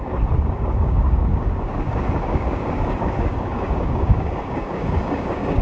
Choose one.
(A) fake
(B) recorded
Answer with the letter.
A